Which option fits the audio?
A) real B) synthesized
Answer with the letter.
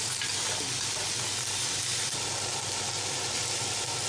A